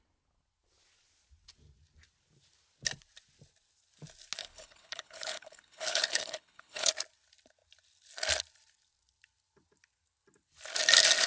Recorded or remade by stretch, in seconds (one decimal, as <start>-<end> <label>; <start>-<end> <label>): 0.0-4.4 recorded; 4.4-6.9 remade; 6.9-11.3 recorded